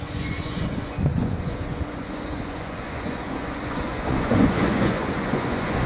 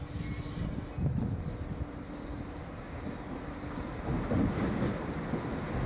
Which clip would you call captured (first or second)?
second